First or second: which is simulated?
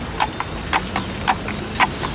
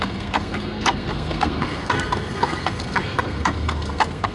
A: second